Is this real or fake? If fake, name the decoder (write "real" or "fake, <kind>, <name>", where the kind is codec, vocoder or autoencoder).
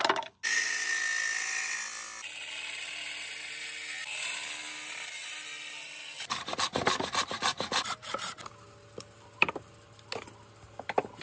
real